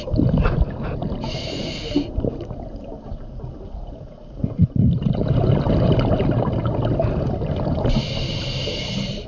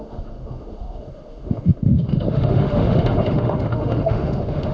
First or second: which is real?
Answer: first